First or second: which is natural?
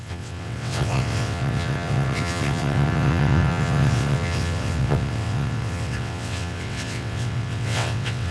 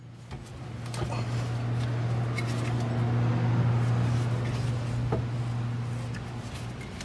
second